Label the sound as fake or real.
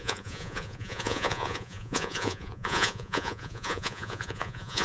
fake